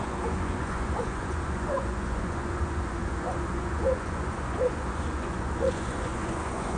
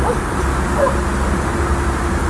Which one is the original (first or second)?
second